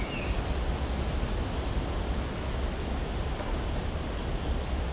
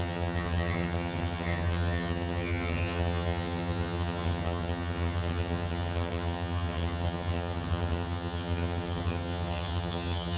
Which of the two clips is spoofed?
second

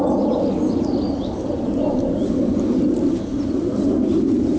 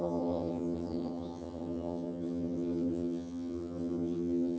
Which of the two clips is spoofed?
second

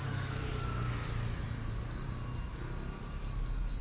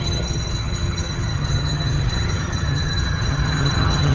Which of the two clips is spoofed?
second